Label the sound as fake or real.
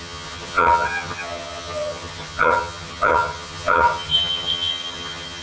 fake